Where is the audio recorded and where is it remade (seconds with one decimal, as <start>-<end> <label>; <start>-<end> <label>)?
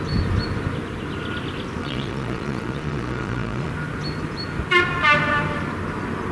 0.0-1.8 recorded; 1.8-3.7 remade; 3.7-6.3 recorded